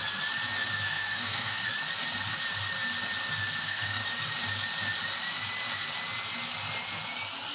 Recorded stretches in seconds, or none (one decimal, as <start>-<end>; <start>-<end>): 0.0-0.9; 1.6-3.6; 4.0-7.5